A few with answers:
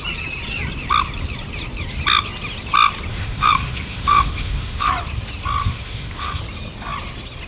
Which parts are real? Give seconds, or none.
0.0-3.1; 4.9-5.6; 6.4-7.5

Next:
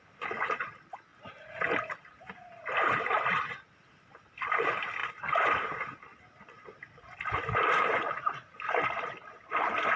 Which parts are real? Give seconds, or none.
0.0-10.0

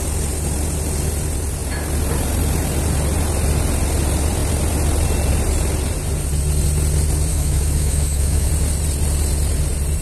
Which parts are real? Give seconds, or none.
0.0-7.3; 8.5-10.0

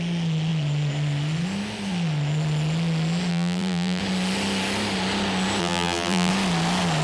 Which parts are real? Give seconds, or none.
0.0-3.3; 4.0-5.6; 6.3-7.0

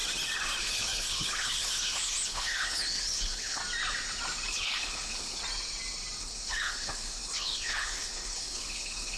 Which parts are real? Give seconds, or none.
0.0-0.6; 3.6-4.5; 5.4-6.2

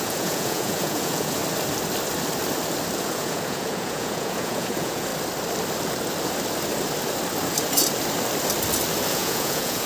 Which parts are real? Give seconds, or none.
1.4-3.0; 5.1-9.1

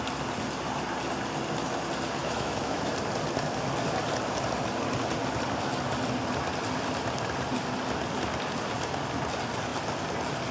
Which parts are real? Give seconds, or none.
0.0-2.2; 2.9-10.5

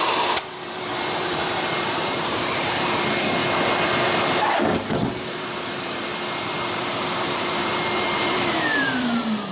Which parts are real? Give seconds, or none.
3.4-4.5; 6.1-6.8